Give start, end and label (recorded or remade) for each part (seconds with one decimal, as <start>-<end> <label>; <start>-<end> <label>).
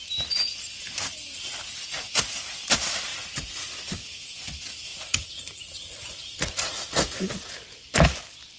0.0-3.1 recorded; 3.1-3.7 remade; 3.7-4.9 recorded; 4.9-7.2 remade; 7.2-8.6 recorded